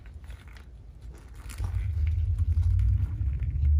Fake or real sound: real